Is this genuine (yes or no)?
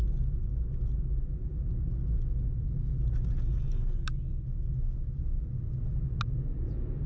yes